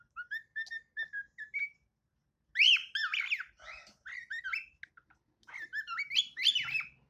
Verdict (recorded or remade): recorded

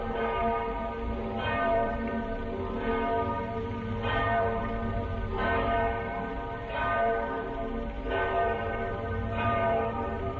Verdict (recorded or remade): remade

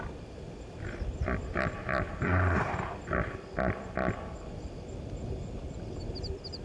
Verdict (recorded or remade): remade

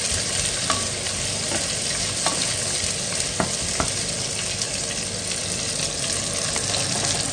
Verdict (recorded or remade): recorded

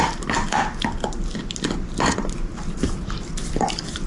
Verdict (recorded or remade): recorded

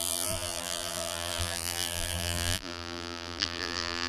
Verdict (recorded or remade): remade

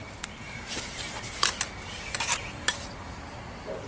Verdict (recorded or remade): remade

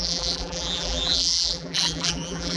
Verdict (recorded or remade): remade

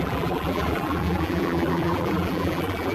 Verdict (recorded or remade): remade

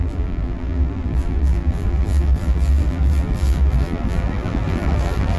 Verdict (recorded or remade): remade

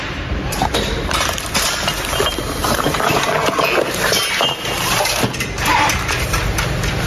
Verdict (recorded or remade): remade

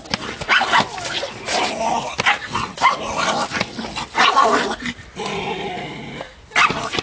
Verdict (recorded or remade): recorded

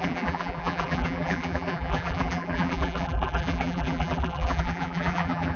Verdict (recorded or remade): remade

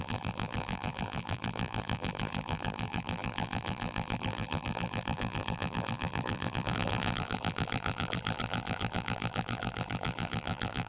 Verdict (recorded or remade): remade